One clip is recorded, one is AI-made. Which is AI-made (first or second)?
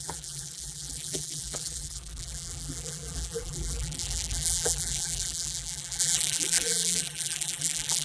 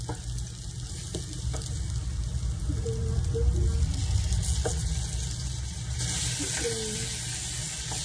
first